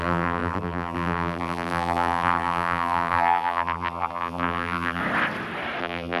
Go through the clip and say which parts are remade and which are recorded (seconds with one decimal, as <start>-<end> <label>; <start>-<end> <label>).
0.0-5.0 remade; 5.0-5.8 recorded; 5.8-6.2 remade